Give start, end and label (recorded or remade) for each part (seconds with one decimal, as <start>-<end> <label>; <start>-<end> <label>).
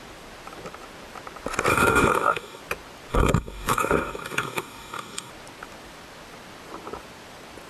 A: 0.0-1.7 recorded; 1.7-2.6 remade; 2.6-3.1 recorded; 3.1-5.3 remade; 5.3-7.7 recorded